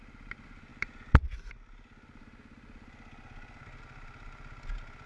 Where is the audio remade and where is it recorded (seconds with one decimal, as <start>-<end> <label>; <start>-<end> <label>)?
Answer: 0.0-5.1 recorded